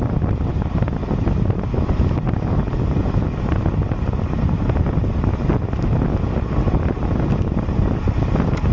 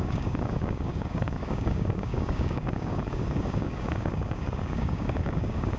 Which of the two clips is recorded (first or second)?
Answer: first